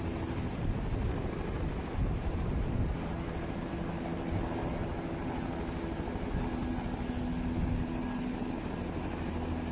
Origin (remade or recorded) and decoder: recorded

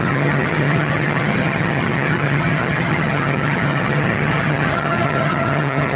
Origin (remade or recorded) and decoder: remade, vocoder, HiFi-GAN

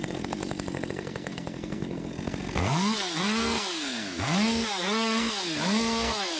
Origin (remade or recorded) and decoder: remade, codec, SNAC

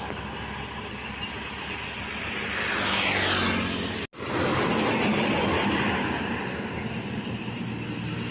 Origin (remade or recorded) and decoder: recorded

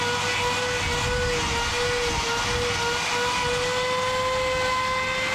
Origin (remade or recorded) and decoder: recorded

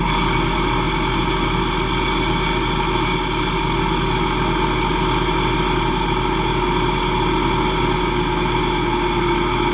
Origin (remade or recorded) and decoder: recorded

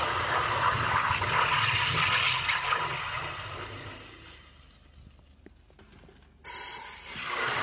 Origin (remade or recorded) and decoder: recorded